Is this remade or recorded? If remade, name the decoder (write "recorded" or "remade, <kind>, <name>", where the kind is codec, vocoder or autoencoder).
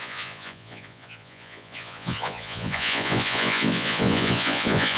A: remade, vocoder, Vocos